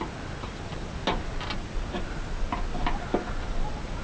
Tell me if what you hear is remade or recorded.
recorded